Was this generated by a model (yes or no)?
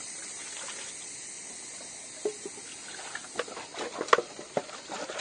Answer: no